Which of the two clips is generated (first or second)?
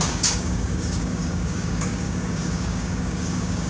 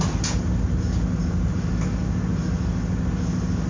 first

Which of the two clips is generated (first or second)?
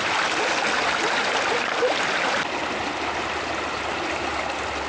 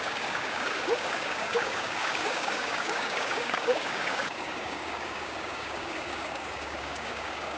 second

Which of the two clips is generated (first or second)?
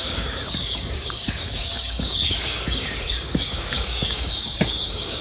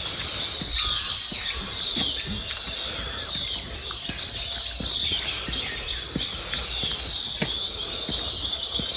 first